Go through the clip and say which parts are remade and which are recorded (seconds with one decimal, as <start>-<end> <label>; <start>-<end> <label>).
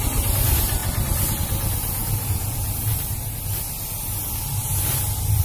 0.0-0.8 recorded; 0.8-1.3 remade; 1.3-5.4 recorded